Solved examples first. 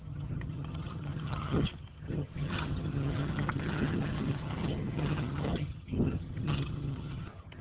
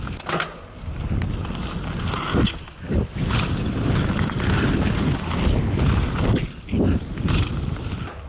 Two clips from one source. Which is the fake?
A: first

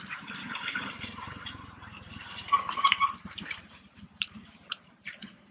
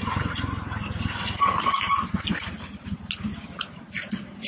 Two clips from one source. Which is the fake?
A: first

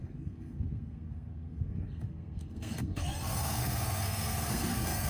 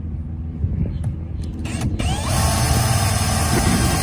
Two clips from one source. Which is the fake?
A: first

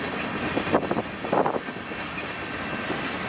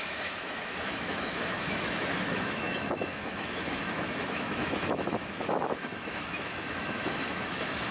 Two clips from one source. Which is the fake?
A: second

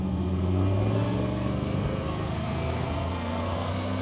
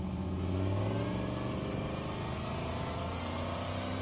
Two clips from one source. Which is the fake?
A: first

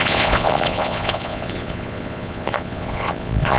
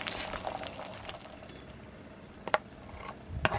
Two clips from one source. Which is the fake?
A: first